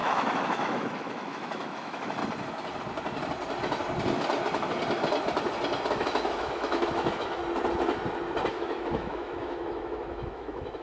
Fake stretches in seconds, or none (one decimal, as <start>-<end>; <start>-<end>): 0.0-2.2; 5.9-7.4; 8.5-10.8